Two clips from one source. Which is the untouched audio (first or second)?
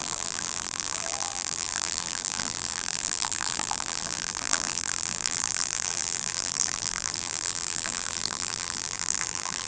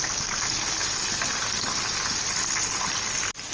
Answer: second